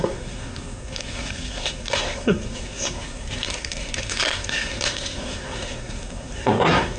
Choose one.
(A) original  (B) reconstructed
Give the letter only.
B